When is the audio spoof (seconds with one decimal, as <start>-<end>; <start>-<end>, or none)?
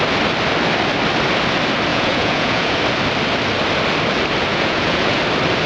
1.9-2.8; 4.5-5.2